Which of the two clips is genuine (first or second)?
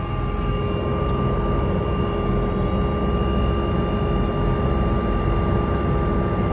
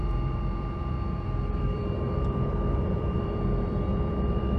first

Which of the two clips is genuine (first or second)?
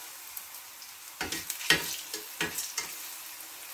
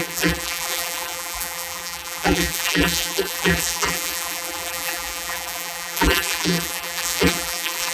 first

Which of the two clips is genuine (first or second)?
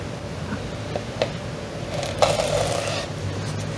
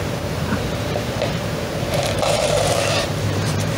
first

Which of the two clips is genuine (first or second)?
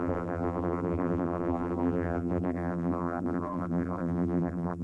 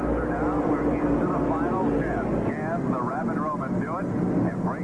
second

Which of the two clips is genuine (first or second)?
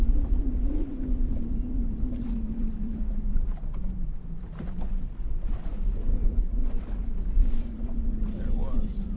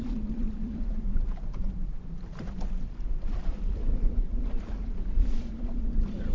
first